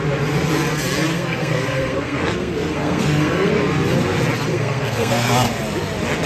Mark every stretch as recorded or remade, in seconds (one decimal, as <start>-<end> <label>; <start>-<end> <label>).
0.0-1.1 recorded; 1.1-3.5 remade; 3.5-4.5 recorded; 4.5-5.3 remade; 5.3-6.3 recorded